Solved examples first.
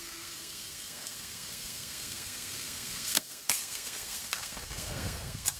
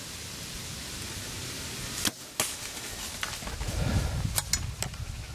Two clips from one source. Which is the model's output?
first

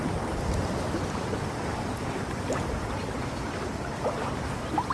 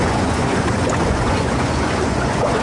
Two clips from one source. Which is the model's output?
second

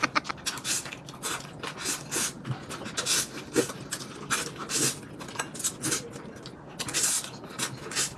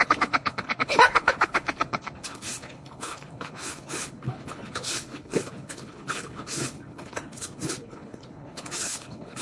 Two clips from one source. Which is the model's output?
second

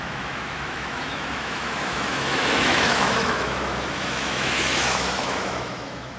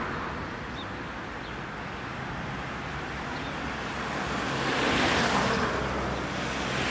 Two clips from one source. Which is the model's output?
first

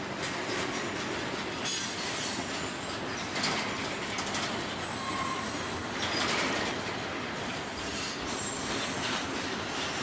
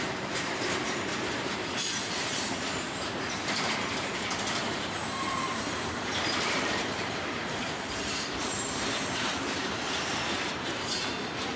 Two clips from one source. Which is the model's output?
second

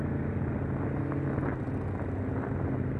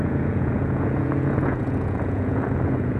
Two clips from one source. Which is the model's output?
second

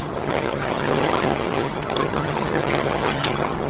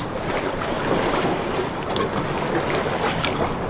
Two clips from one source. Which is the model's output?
first